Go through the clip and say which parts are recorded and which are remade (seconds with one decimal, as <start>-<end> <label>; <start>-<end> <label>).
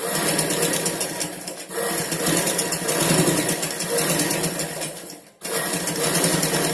0.0-6.7 recorded